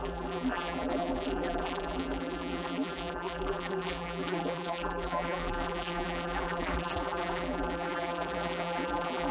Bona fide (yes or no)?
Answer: no